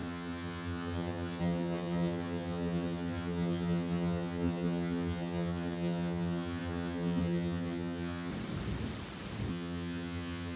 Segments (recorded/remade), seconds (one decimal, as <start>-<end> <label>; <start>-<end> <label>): 0.0-8.3 remade; 8.3-9.5 recorded; 9.5-10.6 remade